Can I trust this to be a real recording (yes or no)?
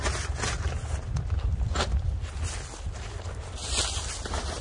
yes